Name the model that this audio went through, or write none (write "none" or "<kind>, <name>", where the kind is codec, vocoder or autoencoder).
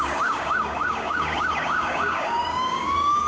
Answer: codec, DAC